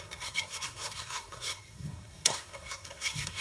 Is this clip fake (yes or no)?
yes